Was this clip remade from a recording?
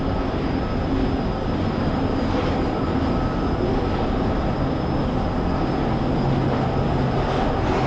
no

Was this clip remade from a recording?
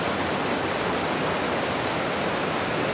no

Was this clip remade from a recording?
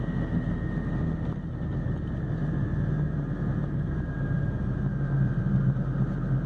no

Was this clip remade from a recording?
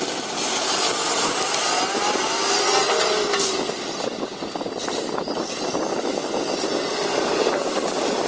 no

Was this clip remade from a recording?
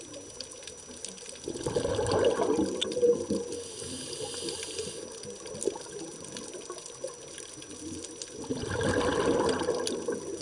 no